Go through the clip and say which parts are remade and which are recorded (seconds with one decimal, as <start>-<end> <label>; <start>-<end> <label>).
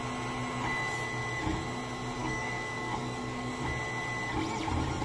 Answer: 0.0-2.2 recorded; 2.2-3.5 remade; 3.5-5.0 recorded